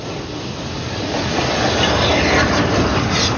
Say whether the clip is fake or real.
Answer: real